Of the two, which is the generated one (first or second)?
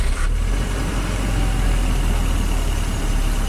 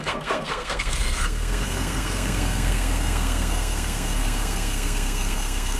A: second